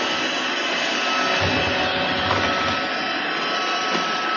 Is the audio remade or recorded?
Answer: recorded